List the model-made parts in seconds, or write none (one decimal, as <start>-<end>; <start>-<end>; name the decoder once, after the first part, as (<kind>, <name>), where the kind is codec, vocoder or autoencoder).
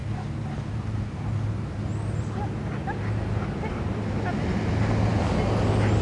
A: none